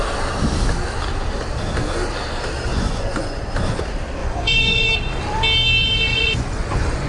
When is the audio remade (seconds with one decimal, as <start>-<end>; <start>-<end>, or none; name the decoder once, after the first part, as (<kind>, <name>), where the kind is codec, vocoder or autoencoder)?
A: 2.7-3.5 (vocoder, Vocos); 4.2-4.9; 6.1-7.1